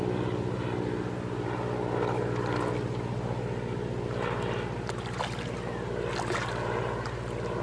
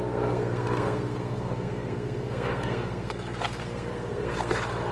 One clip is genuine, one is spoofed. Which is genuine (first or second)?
first